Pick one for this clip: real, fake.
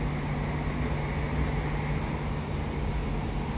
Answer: real